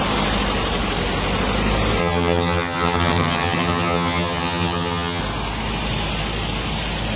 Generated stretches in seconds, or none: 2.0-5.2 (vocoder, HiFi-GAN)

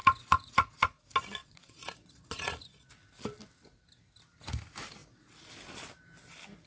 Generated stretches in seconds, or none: 0.0-1.0 (vocoder, Vocos); 1.4-2.9

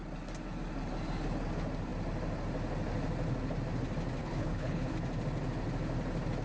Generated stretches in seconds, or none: 4.2-4.9 (codec, HILCodec)

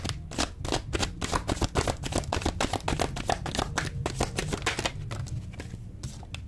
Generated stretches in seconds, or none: none